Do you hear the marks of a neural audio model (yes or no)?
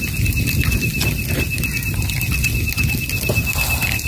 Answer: no